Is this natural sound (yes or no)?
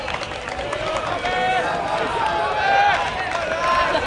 yes